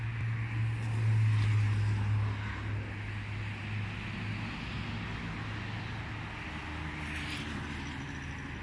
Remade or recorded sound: recorded